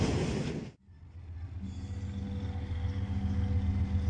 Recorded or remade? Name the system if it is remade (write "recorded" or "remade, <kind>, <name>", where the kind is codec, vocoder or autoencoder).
recorded